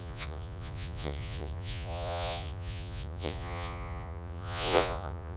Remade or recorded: remade